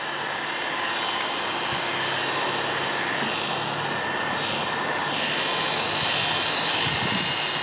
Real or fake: real